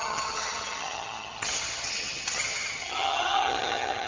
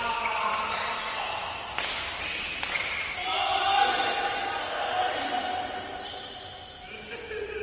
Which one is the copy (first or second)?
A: first